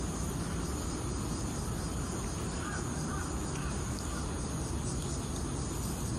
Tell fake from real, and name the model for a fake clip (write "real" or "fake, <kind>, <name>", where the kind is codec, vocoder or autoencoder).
real